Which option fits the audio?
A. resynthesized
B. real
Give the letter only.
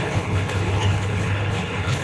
A